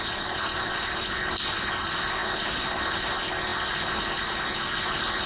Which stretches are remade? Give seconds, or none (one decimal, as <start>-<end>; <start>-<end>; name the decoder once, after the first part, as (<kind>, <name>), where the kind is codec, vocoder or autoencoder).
none